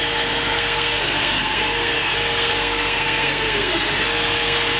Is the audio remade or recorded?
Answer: remade